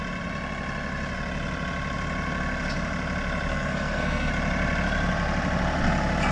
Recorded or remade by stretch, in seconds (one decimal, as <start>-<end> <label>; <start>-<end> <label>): 0.0-3.5 recorded; 3.5-4.3 remade; 4.3-6.3 recorded